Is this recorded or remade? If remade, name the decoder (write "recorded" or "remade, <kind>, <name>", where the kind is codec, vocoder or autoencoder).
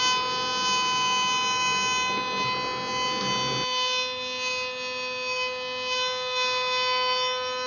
recorded